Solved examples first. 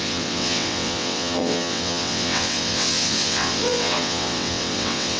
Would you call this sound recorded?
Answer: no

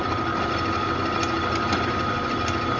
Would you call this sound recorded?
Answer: yes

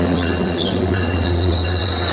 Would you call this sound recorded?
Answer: no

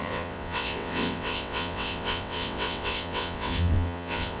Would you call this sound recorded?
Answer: no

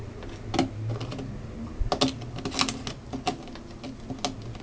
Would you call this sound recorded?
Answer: yes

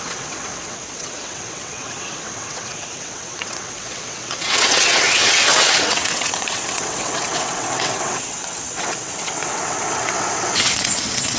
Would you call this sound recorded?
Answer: no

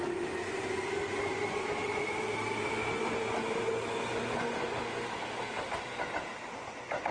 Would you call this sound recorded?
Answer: yes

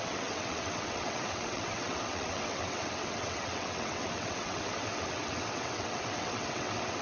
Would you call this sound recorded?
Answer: no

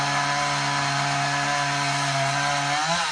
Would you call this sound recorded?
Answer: yes